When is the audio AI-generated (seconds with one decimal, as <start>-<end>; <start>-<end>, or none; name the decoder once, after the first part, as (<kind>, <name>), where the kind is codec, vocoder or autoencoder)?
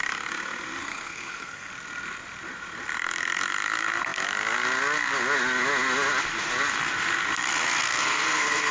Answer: 0.8-1.7 (codec, SNAC); 7.8-8.7